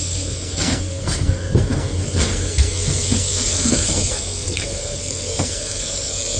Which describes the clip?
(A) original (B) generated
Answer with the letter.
B